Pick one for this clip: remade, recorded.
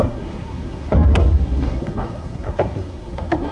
remade